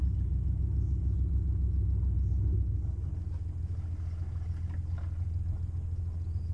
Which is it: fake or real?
real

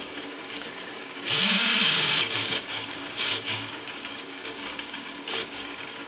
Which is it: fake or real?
fake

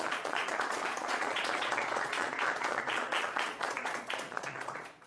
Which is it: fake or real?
fake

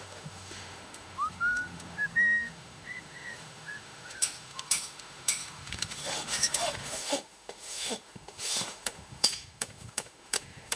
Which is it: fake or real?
fake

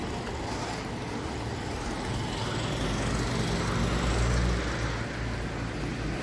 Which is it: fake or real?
real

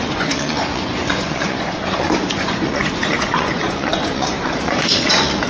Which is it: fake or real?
fake